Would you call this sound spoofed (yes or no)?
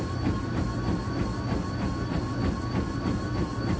no